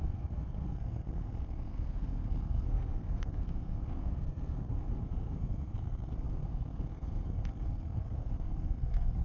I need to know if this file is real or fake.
fake